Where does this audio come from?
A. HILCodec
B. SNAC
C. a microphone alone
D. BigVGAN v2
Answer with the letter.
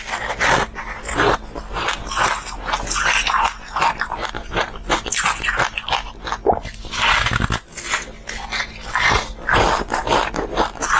C